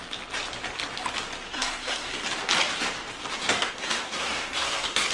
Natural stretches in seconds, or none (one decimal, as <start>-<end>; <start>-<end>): 0.0-1.5; 2.1-3.4